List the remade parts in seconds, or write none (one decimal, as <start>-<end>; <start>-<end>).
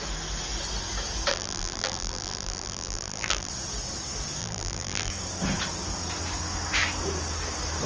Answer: 1.3-3.5; 4.4-5.1